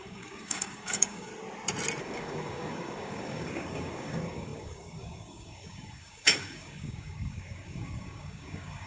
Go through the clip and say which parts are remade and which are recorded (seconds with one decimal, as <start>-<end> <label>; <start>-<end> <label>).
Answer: 0.0-1.3 remade; 1.3-2.0 recorded; 2.0-8.9 remade